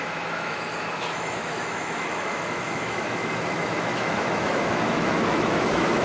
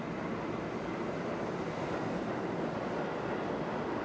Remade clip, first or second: first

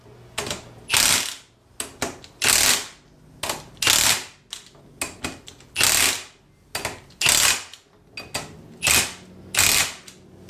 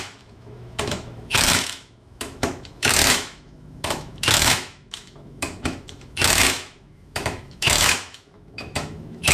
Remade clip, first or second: second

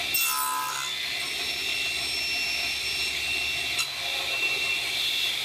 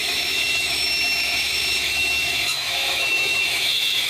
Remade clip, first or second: second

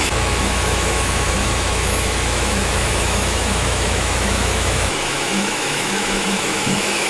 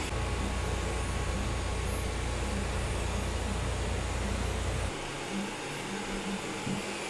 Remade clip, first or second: first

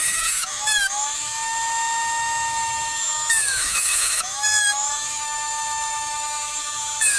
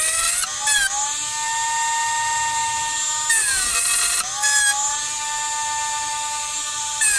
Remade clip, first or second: first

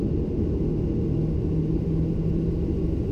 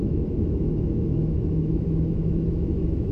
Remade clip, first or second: second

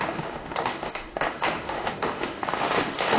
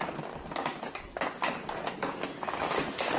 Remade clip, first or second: first